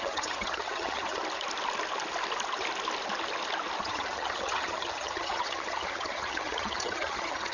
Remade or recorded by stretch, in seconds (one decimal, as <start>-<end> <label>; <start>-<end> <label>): 0.0-1.2 remade; 1.2-3.8 recorded; 3.8-7.5 remade